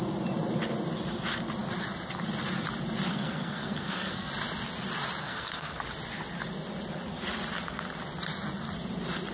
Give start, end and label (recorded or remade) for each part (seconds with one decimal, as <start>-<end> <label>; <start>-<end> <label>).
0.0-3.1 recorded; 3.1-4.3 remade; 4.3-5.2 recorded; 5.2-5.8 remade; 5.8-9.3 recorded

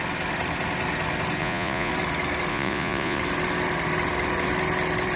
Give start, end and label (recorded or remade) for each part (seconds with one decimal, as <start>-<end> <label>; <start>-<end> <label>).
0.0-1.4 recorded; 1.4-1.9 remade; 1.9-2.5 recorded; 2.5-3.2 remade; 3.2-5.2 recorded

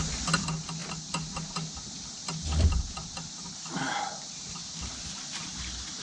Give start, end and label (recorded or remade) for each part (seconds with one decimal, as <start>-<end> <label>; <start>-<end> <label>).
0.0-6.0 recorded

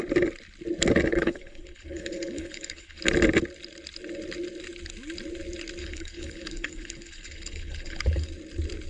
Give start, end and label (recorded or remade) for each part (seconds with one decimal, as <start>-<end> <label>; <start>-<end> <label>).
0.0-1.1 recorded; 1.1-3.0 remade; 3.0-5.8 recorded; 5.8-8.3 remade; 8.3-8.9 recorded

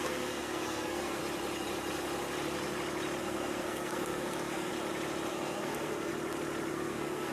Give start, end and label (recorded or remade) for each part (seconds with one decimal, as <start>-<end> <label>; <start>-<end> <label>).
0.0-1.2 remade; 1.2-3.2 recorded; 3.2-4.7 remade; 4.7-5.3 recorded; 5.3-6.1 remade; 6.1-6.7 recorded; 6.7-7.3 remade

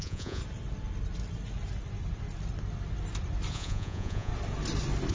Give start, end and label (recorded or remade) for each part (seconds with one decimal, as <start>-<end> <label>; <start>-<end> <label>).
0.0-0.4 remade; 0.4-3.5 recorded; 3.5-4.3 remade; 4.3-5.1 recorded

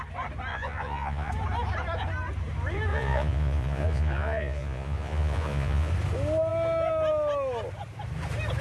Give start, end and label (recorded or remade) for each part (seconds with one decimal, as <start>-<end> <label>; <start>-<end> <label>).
0.0-0.5 recorded; 0.5-1.3 remade; 1.3-2.9 recorded; 2.9-5.9 remade; 5.9-8.6 recorded